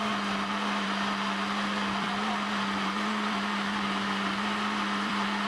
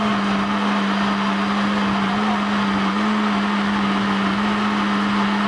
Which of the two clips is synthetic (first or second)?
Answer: first